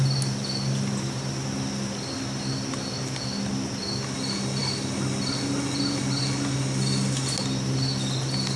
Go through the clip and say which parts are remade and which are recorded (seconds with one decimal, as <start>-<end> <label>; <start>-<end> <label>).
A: 0.0-8.6 recorded